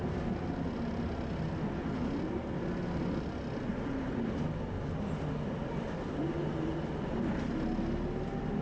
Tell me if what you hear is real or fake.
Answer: real